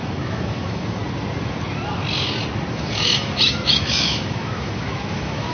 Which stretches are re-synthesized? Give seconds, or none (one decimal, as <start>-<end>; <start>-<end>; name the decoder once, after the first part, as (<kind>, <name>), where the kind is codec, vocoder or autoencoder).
0.0-1.0 (autoencoder, DAC-VAE); 2.7-5.5